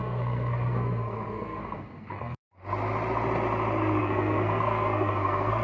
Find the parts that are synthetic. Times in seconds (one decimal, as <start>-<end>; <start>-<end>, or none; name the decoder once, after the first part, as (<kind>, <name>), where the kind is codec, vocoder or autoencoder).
0.0-2.6 (codec, SNAC); 4.0-5.6